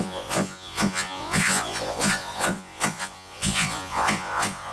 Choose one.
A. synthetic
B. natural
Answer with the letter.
A